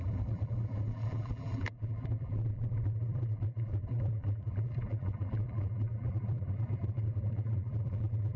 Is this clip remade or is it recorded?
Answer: remade